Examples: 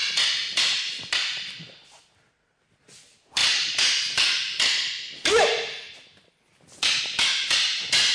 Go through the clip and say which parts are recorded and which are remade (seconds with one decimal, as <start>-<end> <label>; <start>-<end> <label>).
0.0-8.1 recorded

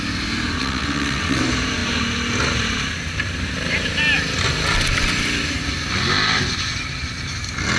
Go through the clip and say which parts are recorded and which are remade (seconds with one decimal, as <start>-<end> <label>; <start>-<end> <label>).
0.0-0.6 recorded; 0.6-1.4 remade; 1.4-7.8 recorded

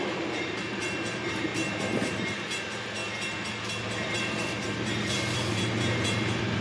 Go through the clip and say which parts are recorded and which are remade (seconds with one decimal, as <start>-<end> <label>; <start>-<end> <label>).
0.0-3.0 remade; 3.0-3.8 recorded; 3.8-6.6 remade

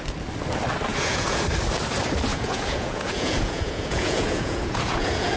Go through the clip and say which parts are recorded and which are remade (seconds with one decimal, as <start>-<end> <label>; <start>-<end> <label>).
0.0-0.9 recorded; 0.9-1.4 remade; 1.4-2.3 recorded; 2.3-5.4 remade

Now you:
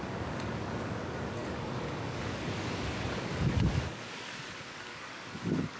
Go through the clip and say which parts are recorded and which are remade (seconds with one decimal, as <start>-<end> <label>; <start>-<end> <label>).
0.0-5.8 remade

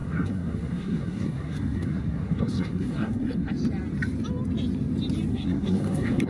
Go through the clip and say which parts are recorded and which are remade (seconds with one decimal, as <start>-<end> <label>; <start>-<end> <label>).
0.0-3.5 remade; 3.5-5.3 recorded; 5.3-6.3 remade

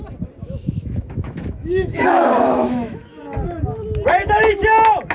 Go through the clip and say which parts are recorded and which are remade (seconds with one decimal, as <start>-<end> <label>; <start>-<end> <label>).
0.0-0.4 recorded; 0.4-3.2 remade; 3.2-5.1 recorded

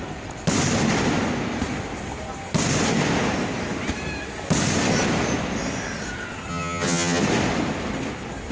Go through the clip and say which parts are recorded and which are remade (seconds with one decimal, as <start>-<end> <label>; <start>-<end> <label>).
0.0-6.5 recorded; 6.5-7.2 remade; 7.2-8.5 recorded